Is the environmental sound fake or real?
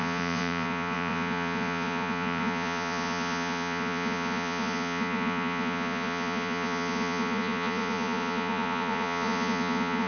fake